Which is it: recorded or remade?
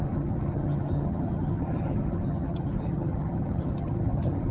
remade